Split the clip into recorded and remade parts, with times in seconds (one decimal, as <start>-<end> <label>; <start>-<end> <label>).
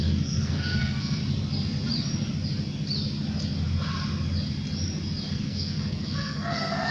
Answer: 0.0-1.2 remade; 1.2-5.3 recorded; 5.3-6.9 remade